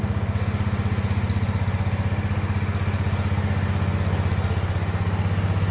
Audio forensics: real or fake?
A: real